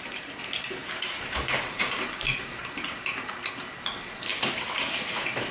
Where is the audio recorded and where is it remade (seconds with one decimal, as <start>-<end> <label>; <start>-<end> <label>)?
0.0-0.8 recorded; 0.8-3.5 remade; 3.5-4.3 recorded; 4.3-5.5 remade